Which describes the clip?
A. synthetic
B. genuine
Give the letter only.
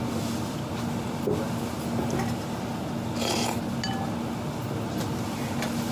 B